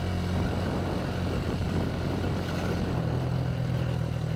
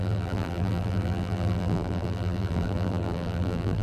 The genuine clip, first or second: first